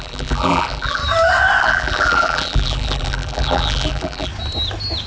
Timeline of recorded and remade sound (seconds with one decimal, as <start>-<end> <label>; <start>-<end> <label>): 0.0-1.0 remade; 1.0-1.6 recorded; 1.6-4.3 remade; 4.3-5.1 recorded